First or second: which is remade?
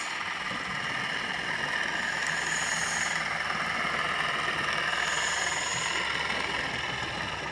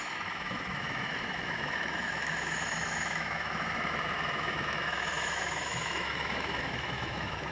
second